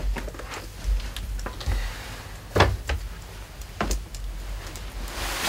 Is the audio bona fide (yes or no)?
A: yes